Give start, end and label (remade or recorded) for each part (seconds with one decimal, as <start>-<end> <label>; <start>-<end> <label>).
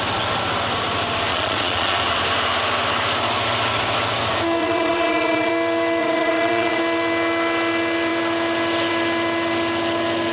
0.0-1.3 recorded; 1.3-2.0 remade; 2.0-4.6 recorded; 4.6-5.5 remade; 5.5-6.0 recorded; 6.0-6.8 remade; 6.8-10.3 recorded